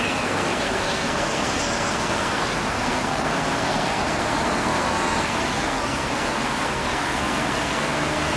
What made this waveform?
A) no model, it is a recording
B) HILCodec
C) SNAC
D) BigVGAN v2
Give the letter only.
C